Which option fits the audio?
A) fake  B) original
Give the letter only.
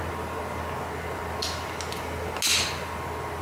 B